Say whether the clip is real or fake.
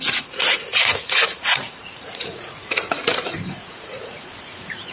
fake